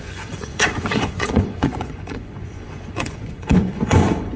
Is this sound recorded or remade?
remade